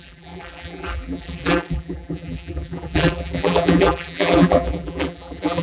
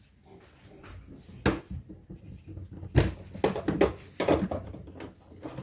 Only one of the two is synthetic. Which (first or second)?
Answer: first